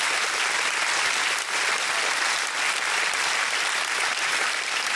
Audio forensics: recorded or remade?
remade